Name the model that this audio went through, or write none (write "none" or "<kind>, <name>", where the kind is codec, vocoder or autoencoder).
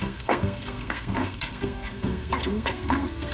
codec, SNAC